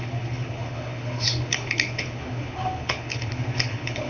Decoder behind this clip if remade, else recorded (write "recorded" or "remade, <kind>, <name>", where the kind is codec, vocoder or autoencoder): remade, codec, HILCodec